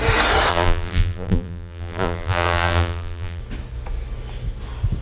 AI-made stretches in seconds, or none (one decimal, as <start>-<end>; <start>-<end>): 0.5-3.4

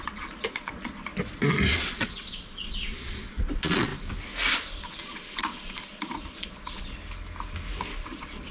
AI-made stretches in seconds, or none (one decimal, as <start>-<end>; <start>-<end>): 0.0-1.1; 1.7-3.9; 4.8-7.0; 7.9-8.5